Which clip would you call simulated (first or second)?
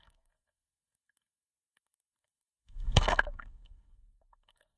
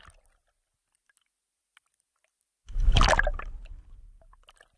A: first